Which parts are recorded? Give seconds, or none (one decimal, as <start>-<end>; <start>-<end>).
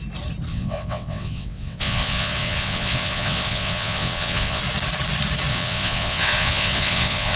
0.0-0.5; 4.6-5.5